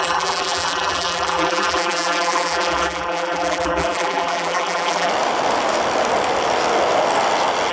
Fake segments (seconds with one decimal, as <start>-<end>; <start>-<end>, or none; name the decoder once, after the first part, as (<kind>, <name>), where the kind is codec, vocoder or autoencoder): 0.0-5.1 (vocoder, BigVGAN v2)